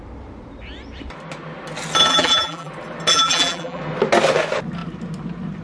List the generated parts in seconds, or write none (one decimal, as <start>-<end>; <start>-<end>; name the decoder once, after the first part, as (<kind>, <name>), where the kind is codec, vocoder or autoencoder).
2.1-2.7 (vocoder, BigVGAN v2); 3.1-3.8